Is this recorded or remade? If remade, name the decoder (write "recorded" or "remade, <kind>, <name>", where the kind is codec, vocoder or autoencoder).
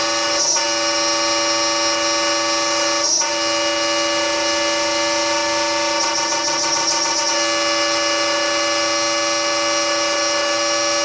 recorded